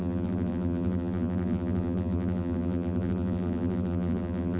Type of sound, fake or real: fake